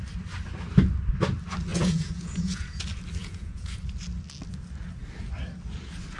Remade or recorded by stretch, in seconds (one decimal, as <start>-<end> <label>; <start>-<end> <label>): 0.0-1.7 recorded; 1.7-2.8 remade; 2.8-3.2 recorded; 3.2-3.8 remade; 3.8-6.2 recorded

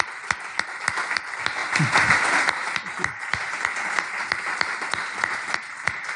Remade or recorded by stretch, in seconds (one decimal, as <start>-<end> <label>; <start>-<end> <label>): 0.0-6.2 recorded

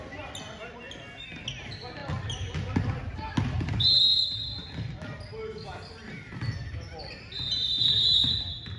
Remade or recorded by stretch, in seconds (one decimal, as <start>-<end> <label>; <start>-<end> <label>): 0.0-8.8 recorded

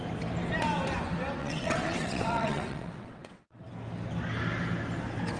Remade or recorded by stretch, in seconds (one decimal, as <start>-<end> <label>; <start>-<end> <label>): 0.0-1.4 recorded; 1.4-3.7 remade; 3.7-5.4 recorded